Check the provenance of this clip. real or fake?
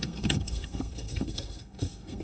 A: fake